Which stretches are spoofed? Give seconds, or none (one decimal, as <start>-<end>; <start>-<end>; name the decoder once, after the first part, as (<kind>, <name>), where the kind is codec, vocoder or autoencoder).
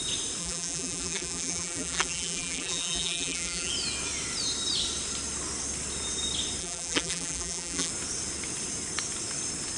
0.4-3.7 (vocoder, BigVGAN v2); 6.6-7.9